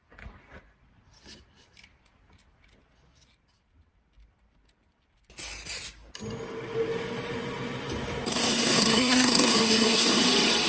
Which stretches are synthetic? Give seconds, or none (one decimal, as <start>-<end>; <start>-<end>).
8.3-10.2